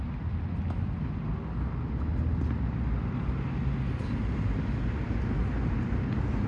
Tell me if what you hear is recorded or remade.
recorded